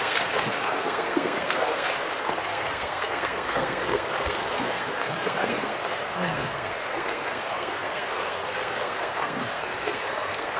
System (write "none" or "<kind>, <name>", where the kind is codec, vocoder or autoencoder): codec, SNAC